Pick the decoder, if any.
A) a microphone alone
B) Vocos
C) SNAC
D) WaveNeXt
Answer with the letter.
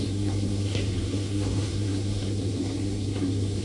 C